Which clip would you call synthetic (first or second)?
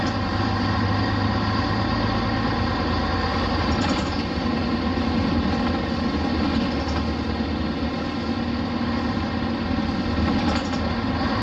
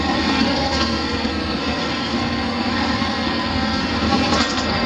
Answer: second